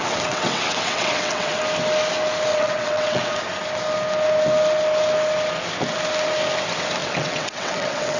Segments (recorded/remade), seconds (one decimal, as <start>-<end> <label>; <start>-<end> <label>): 0.0-1.6 remade; 1.6-2.5 recorded; 2.5-3.4 remade; 3.4-7.0 recorded; 7.0-8.2 remade